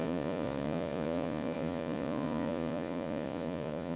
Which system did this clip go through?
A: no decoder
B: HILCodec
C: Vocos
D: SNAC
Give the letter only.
C